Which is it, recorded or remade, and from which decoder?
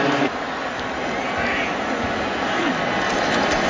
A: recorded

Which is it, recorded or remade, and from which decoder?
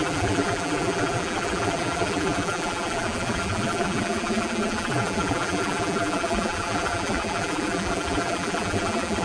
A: remade, vocoder, BigVGAN v2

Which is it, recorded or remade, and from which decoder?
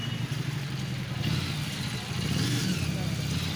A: recorded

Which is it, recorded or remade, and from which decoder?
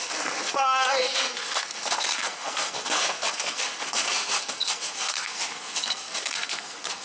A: remade, codec, SNAC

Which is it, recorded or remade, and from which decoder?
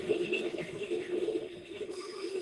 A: remade, autoencoder, DAC-VAE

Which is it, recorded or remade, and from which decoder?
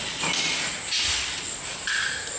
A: recorded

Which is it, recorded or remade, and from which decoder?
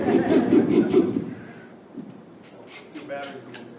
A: recorded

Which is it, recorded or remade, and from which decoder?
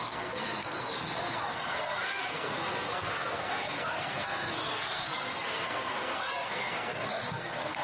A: remade, codec, SNAC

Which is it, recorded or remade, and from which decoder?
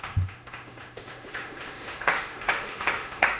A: remade, autoencoder, DAC-VAE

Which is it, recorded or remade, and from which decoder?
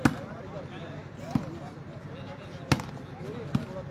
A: recorded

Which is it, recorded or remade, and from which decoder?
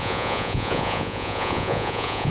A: remade, vocoder, Vocos